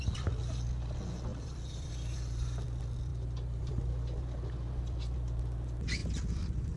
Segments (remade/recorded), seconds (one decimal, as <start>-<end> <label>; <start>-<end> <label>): 0.0-1.3 recorded; 1.3-1.9 remade; 1.9-3.1 recorded; 3.1-3.9 remade; 3.9-6.0 recorded; 6.0-6.8 remade